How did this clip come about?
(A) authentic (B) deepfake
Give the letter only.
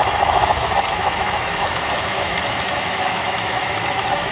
B